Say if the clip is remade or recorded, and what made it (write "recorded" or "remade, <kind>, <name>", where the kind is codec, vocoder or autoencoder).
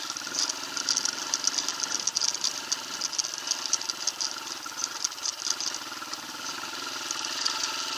recorded